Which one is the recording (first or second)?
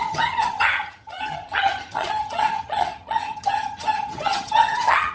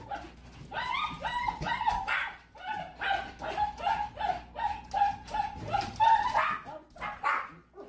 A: second